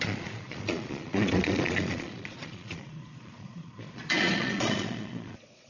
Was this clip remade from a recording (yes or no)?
yes